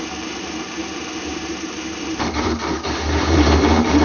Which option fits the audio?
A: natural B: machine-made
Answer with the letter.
B